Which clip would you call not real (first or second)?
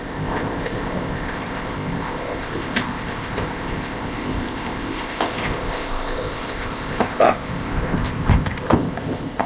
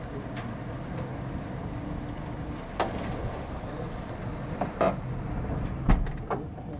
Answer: first